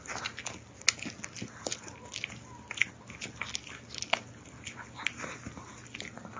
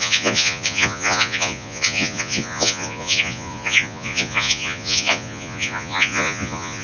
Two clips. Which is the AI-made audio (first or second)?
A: second